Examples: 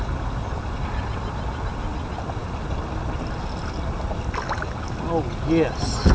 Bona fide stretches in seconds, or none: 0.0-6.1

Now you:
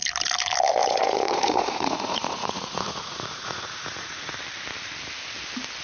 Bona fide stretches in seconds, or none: 0.0-0.8; 4.3-5.8

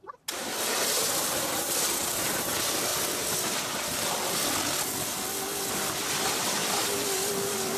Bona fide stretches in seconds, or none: 0.0-7.8